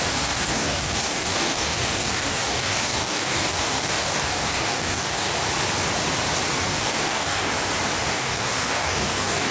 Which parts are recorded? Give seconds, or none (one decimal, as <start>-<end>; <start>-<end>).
5.4-6.6; 7.5-8.0